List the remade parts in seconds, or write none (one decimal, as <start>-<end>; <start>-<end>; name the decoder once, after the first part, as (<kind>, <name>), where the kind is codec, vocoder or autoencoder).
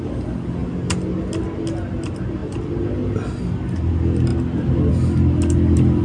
none